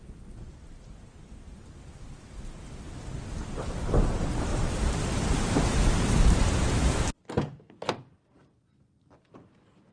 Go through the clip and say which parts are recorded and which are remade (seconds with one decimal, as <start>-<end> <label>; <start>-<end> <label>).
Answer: 0.0-4.5 recorded; 4.5-7.0 remade; 7.0-9.9 recorded